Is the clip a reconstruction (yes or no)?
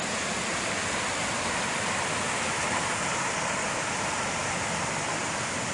no